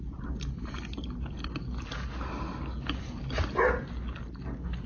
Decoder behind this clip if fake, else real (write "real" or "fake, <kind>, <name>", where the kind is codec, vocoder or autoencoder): real